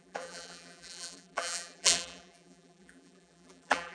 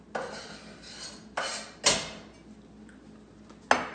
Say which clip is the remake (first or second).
first